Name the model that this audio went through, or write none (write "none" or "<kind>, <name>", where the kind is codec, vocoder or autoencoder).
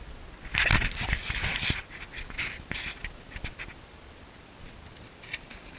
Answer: none